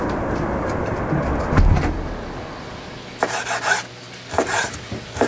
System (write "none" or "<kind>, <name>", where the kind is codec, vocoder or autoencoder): none